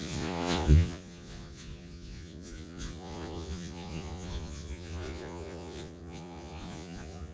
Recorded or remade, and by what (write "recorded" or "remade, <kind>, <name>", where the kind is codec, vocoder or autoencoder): remade, vocoder, Vocos